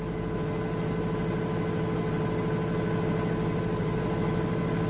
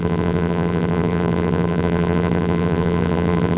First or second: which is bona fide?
first